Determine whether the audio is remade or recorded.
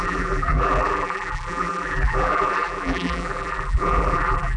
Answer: remade